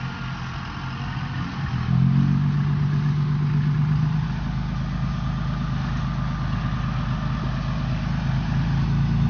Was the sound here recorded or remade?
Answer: recorded